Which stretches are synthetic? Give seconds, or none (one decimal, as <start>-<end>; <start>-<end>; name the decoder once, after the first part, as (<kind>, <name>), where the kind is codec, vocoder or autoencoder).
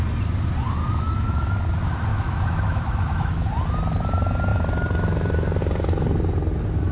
0.8-1.5 (autoencoder, DAC-VAE); 2.1-3.5